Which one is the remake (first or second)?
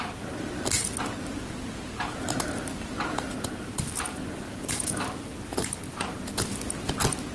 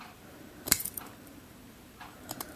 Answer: second